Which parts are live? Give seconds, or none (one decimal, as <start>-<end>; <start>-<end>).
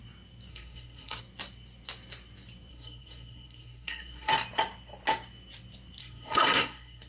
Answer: 0.0-0.5; 1.2-2.7; 4.3-6.0